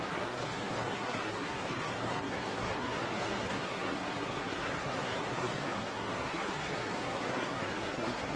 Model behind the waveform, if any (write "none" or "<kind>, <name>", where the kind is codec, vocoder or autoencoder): codec, SNAC